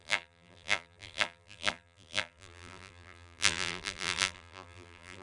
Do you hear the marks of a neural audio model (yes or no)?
yes